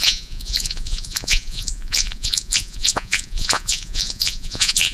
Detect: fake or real fake